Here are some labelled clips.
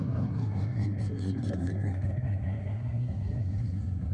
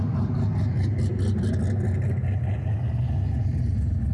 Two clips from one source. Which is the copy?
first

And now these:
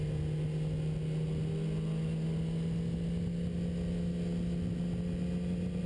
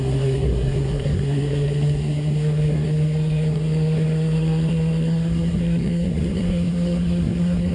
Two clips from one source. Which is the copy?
second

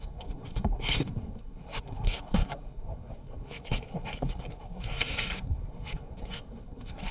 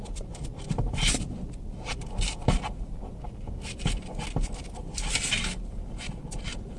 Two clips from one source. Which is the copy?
first